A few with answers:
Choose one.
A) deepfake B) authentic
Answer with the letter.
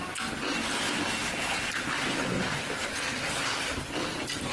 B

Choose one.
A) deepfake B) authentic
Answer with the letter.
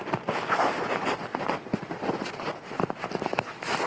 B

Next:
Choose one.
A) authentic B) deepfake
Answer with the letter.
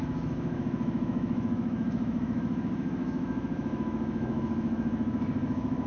B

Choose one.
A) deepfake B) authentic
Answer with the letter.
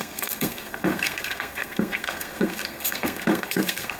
A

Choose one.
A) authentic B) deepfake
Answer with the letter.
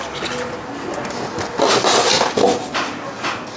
A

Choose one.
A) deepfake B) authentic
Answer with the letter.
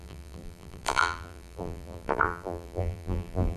A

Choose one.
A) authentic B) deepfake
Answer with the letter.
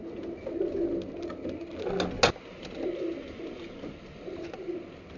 A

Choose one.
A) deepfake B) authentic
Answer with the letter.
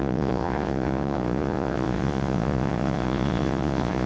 A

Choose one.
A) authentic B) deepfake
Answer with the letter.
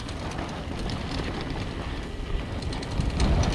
A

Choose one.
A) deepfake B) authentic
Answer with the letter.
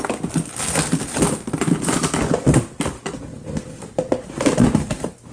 B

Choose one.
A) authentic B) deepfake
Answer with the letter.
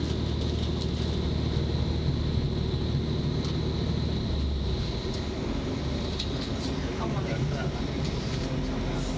A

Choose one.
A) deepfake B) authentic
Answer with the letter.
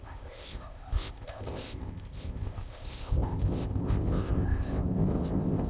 A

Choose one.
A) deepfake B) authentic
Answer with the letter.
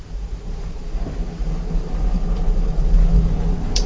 A